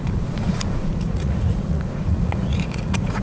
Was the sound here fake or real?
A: fake